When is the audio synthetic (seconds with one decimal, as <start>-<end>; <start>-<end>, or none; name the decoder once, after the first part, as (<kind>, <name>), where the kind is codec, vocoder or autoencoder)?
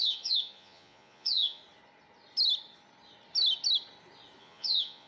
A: 0.0-1.6 (vocoder, Vocos); 4.4-5.1